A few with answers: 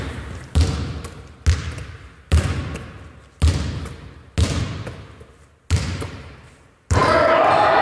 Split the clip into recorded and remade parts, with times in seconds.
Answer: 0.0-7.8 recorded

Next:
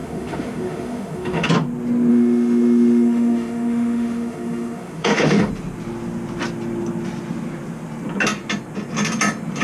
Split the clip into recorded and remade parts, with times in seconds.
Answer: 0.0-1.5 remade; 1.5-2.1 recorded; 2.1-5.5 remade; 5.5-9.6 recorded

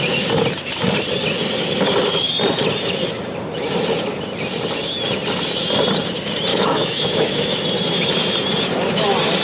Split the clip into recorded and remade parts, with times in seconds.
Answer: 0.0-6.5 recorded; 6.5-7.6 remade; 7.6-9.4 recorded